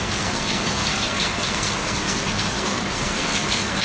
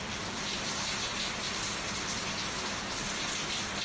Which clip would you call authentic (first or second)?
second